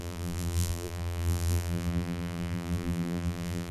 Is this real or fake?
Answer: fake